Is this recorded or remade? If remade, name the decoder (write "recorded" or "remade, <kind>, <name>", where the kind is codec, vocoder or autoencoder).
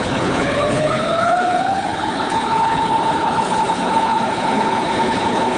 remade, codec, HILCodec